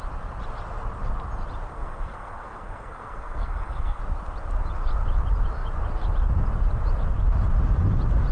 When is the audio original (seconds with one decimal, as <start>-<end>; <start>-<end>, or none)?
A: 0.0-1.7; 4.0-8.3